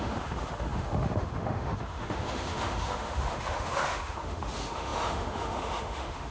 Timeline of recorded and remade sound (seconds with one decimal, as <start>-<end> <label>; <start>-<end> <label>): 0.0-6.3 remade